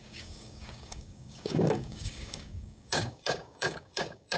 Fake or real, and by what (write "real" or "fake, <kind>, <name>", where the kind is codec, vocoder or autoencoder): fake, codec, DAC